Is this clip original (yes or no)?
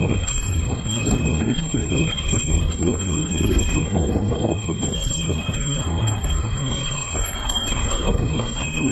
no